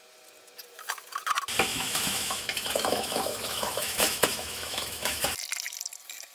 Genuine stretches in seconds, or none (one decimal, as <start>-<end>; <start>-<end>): 0.0-1.7; 5.2-6.3